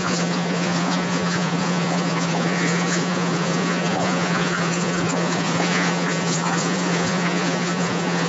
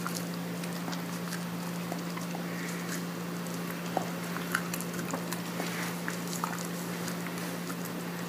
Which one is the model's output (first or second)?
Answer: first